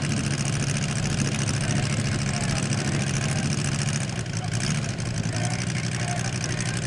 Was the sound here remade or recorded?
recorded